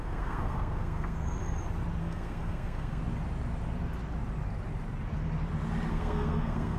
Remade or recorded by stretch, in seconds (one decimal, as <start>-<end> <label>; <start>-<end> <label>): 0.0-1.4 remade; 1.4-2.0 recorded; 2.0-3.0 remade; 3.0-5.9 recorded; 5.9-6.8 remade